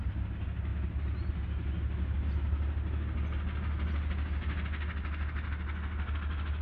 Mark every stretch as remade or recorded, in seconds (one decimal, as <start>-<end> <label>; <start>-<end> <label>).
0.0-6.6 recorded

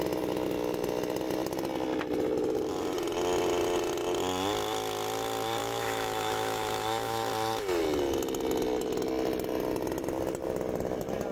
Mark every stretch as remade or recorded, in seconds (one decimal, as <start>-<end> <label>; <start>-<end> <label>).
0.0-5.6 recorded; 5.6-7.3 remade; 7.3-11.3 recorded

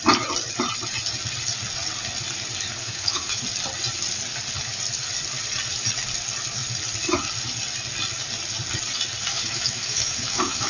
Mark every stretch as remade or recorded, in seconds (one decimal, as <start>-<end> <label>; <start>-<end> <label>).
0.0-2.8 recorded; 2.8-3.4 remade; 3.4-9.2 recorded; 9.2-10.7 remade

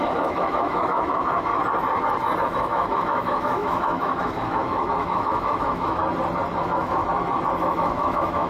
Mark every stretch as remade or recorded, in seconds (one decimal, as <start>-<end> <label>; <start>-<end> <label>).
0.0-1.5 remade; 1.5-2.4 recorded; 2.4-6.0 remade; 6.0-6.6 recorded; 6.6-7.0 remade; 7.0-7.6 recorded; 7.6-8.5 remade